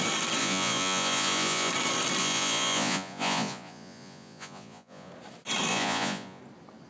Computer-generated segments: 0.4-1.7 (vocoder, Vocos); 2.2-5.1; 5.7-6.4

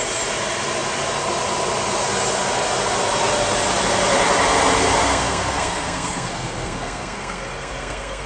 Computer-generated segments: 5.0-8.3 (codec, SNAC)